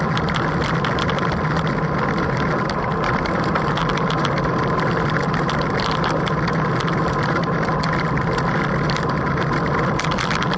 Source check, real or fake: fake